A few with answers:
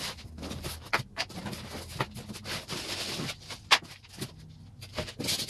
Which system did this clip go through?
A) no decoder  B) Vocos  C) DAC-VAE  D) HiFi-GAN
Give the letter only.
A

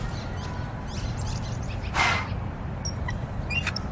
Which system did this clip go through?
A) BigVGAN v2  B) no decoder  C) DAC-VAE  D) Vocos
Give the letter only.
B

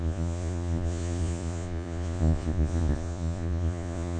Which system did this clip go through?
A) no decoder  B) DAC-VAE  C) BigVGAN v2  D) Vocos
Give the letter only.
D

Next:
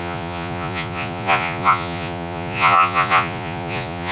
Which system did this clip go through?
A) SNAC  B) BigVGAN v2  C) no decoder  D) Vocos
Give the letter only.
D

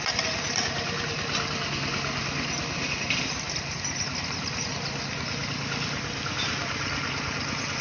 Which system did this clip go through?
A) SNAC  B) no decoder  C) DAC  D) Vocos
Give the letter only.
B